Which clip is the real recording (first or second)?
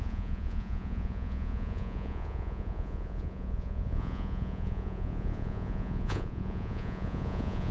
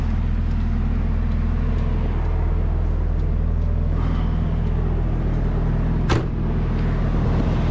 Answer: second